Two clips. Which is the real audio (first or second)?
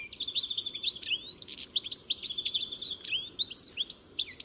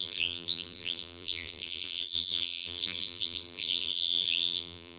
first